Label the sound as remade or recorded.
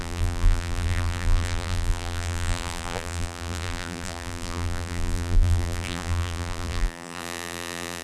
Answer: remade